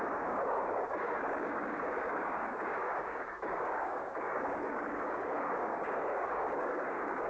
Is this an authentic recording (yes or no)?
no